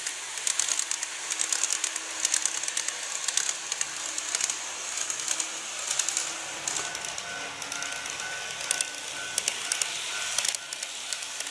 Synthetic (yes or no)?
no